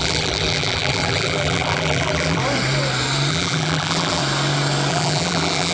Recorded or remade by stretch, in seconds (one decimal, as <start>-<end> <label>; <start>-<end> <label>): 0.0-2.4 remade; 2.4-3.3 recorded; 3.3-4.2 remade; 4.2-4.9 recorded; 4.9-5.7 remade